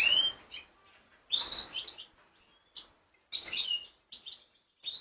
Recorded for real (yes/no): yes